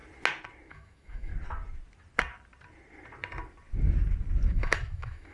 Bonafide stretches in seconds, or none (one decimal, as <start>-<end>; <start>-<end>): 0.0-0.7; 1.3-4.5

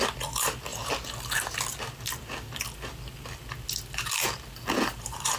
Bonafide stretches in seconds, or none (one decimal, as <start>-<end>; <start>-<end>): 0.0-5.4

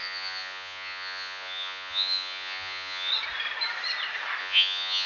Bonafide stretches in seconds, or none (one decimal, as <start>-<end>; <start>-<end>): 3.1-4.4

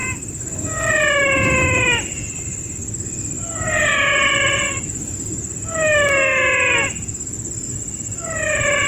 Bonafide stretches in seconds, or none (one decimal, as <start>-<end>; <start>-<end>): 0.0-8.9